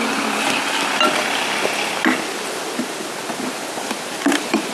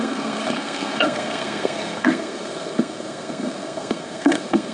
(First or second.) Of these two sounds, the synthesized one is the second